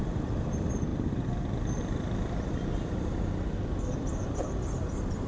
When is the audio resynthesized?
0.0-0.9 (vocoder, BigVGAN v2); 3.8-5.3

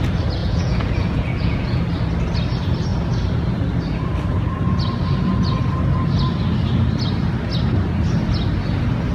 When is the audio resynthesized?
0.4-1.8 (vocoder, Vocos)